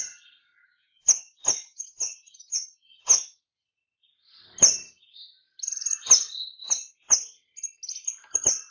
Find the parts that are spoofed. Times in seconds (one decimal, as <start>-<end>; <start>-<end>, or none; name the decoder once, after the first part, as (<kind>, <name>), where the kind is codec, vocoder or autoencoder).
0.6-3.3 (autoencoder, DAC-VAE)